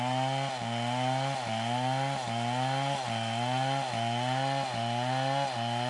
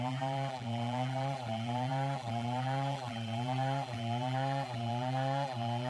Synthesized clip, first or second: second